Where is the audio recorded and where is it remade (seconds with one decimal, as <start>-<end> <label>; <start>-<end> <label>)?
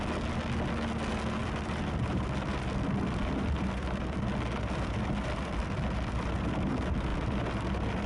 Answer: 0.0-1.4 recorded; 1.4-6.3 remade; 6.3-7.1 recorded; 7.1-8.1 remade